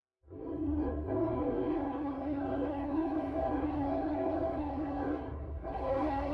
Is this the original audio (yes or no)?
no